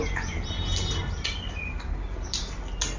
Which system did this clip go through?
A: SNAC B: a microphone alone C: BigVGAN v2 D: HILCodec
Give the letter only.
B